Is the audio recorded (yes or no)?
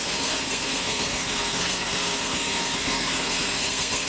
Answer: no